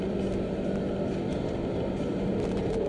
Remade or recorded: remade